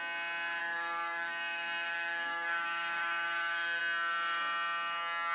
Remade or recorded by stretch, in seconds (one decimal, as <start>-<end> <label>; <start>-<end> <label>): 0.0-0.6 recorded; 0.6-3.8 remade; 3.8-5.3 recorded